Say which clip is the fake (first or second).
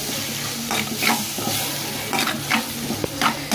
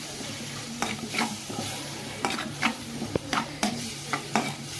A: second